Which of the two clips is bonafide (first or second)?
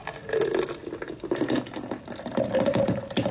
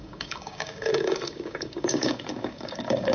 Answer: first